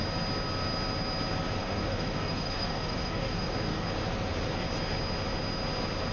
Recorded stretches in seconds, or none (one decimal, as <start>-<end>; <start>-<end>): 0.0-1.6; 3.9-6.1